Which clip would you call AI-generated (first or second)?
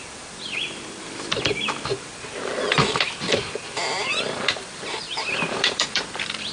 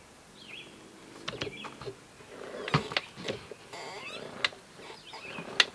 first